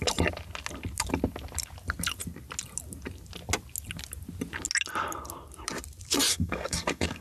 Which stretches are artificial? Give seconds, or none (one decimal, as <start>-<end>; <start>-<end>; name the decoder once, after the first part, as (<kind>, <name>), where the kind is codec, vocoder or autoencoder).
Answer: 6.3-7.2 (codec, SNAC)